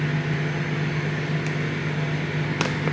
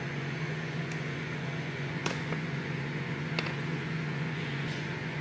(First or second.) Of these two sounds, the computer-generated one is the second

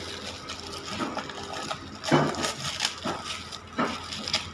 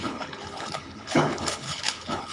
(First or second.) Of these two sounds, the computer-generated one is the second